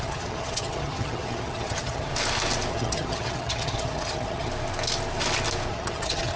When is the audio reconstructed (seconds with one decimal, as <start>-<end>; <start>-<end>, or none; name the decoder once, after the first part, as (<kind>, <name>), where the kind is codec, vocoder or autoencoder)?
0.0-2.1 (vocoder, HiFi-GAN); 2.7-4.5; 5.7-6.4